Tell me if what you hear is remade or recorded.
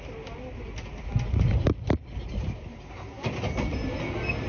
recorded